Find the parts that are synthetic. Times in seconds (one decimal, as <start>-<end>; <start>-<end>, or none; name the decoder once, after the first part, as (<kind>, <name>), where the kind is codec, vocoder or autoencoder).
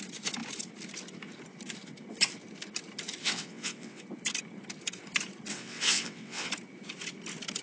3.2-4.0 (vocoder, WaveNeXt); 5.5-6.5